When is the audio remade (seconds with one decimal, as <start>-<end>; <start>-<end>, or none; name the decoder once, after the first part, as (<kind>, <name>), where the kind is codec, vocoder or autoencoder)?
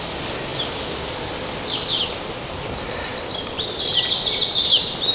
none